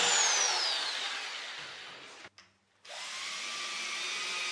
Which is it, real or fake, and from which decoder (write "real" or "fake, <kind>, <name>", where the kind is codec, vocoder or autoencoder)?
real